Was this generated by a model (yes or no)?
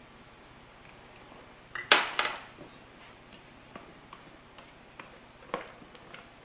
no